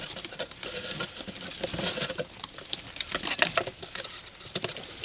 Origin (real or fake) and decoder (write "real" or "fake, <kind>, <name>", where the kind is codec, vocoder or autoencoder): fake, vocoder, BigVGAN v2